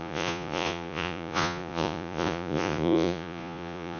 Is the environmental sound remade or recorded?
remade